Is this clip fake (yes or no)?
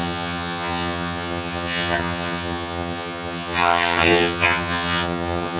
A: yes